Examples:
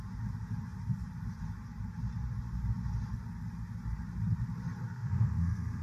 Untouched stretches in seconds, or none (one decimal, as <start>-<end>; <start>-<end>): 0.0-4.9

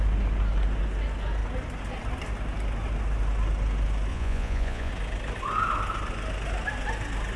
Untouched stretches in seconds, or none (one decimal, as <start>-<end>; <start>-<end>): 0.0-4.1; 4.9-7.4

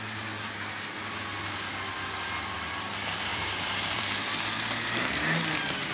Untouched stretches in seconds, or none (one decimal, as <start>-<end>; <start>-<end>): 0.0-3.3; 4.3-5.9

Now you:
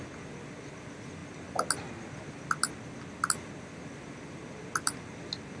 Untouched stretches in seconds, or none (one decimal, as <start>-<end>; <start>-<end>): 0.0-5.6

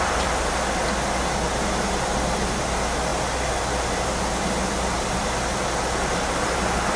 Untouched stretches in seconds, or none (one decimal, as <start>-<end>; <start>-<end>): 0.0-7.0

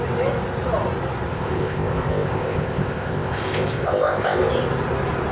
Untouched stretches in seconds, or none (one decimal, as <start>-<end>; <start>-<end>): 0.0-1.3; 4.5-5.3

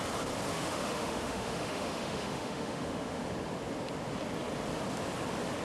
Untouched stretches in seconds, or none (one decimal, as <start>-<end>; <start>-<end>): 0.0-0.5; 3.2-5.6